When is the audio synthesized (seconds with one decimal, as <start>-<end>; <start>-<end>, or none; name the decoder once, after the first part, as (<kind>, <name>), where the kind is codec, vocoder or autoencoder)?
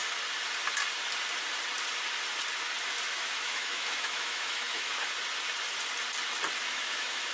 3.1-5.0 (autoencoder, DAC-VAE); 6.6-7.3